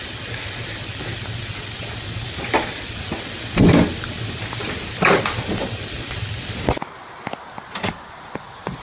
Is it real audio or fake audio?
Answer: real